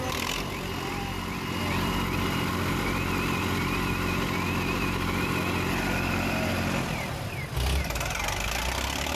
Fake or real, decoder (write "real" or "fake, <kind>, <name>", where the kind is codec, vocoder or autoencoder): real